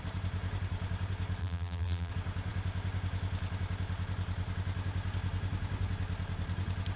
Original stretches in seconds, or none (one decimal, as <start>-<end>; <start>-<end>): 0.0-1.4; 2.1-7.0